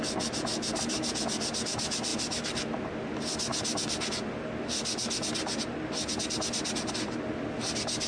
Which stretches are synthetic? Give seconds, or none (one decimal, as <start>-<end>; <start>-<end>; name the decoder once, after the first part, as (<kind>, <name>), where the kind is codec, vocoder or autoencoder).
none